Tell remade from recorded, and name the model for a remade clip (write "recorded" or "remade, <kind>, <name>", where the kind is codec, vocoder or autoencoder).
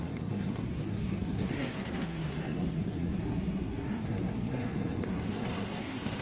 remade, codec, SNAC